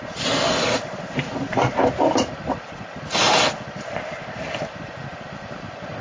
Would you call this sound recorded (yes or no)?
yes